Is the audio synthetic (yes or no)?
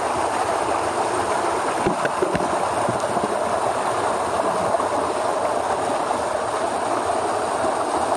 no